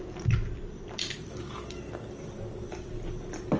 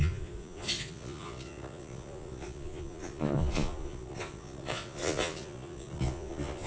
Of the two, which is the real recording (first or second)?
first